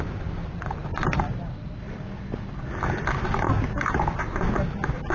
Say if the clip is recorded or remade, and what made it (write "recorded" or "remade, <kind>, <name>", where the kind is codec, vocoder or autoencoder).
recorded